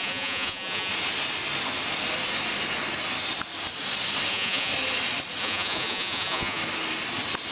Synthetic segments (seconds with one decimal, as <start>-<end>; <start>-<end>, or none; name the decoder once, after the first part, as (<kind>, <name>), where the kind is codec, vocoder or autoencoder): 0.0-0.9 (vocoder, Vocos); 4.3-4.7; 5.4-6.6